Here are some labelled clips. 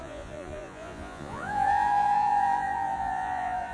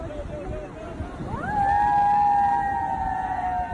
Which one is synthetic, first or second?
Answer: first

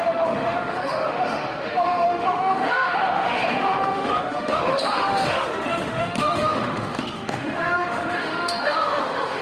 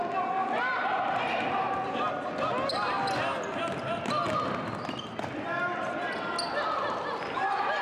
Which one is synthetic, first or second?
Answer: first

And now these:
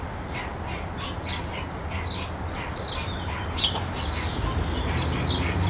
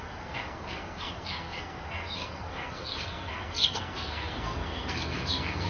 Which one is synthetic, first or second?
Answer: second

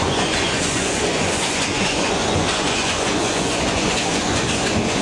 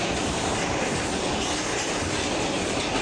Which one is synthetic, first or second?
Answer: first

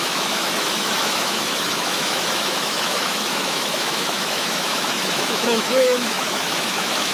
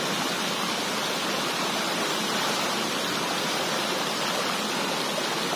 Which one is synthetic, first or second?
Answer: first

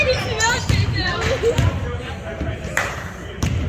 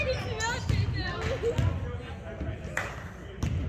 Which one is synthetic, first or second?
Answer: first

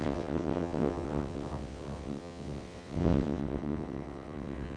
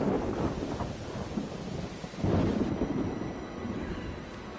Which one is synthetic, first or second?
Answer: first